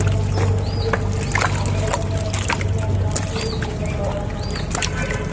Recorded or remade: recorded